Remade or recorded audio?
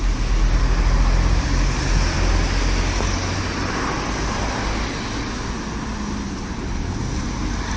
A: recorded